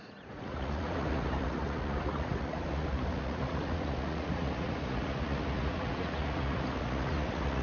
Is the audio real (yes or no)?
no